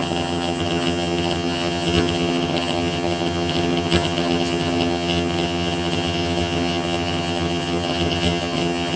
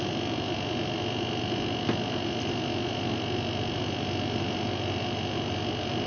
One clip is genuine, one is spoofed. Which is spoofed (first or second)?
first